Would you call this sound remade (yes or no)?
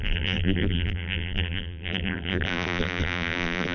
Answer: yes